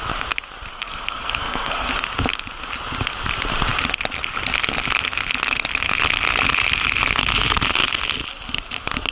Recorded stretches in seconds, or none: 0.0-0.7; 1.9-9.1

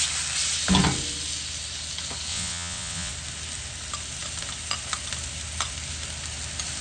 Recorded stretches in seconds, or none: 0.0-2.3; 3.1-6.8

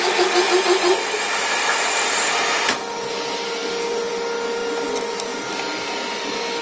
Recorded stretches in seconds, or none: 0.0-6.6

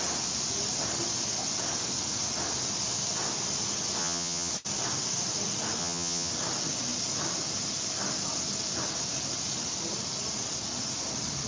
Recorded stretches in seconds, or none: 0.0-4.0; 4.5-5.8; 6.3-11.5